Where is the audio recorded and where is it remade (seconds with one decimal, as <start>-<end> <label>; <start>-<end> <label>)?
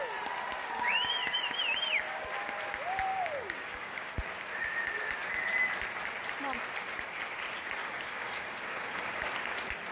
0.0-0.6 recorded; 0.6-1.1 remade; 1.1-3.1 recorded; 3.1-4.1 remade; 4.1-7.8 recorded; 7.8-9.2 remade; 9.2-9.9 recorded